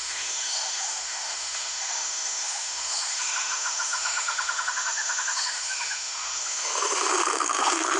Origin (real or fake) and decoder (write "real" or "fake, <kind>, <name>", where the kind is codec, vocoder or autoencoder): fake, autoencoder, DAC-VAE